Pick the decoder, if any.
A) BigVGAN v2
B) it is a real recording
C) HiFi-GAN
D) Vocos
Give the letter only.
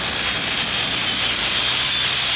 B